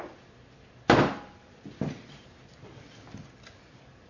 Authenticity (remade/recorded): recorded